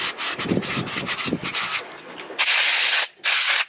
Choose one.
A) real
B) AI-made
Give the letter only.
A